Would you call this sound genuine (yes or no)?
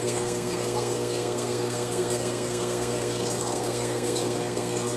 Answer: no